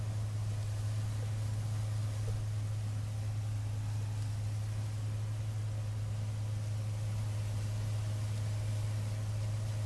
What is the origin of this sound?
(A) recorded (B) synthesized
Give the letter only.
A